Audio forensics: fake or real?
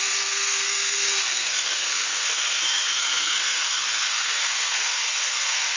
fake